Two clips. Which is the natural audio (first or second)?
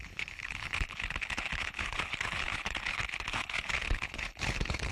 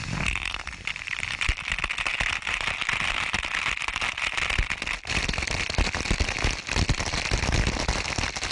second